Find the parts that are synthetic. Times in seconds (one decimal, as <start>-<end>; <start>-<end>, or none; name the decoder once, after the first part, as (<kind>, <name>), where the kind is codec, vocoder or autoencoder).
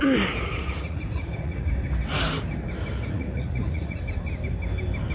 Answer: 0.6-1.7 (vocoder, Vocos); 2.9-4.0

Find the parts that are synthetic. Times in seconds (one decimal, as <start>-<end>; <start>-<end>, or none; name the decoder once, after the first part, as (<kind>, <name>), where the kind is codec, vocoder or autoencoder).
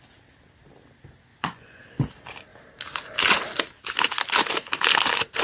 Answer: 1.3-1.8 (vocoder, Vocos)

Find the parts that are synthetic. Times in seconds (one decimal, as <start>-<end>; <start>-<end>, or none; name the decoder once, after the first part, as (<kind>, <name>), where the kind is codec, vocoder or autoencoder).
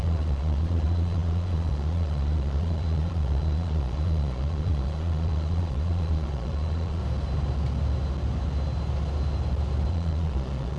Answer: 0.0-7.0 (vocoder, Vocos); 9.9-10.8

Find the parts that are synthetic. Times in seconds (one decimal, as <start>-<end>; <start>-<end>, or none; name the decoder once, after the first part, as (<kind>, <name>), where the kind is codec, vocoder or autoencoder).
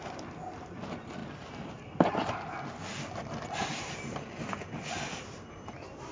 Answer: none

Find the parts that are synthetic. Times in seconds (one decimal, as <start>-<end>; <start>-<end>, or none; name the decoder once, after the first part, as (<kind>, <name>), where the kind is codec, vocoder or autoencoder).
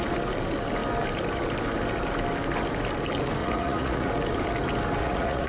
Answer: 3.4-4.1 (vocoder, Vocos); 5.0-5.5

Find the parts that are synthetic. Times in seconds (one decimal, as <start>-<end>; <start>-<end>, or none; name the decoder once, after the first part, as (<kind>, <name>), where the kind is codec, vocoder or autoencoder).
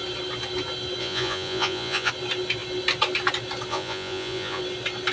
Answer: 1.0-2.1 (vocoder, Vocos); 3.7-4.6